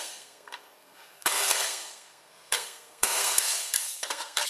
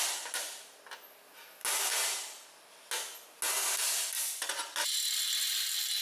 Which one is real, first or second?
second